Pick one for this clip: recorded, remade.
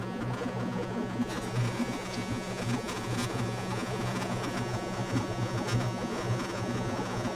remade